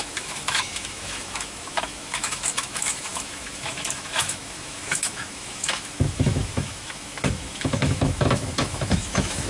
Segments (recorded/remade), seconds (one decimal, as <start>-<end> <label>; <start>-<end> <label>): 0.0-9.5 remade